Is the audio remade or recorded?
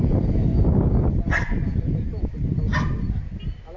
recorded